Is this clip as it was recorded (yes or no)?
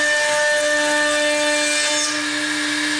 yes